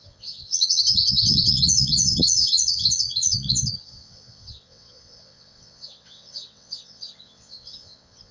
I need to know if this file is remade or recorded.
remade